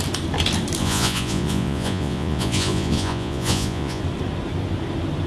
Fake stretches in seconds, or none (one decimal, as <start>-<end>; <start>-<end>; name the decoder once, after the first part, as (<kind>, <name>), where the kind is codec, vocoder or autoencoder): 0.8-4.0 (vocoder, Vocos)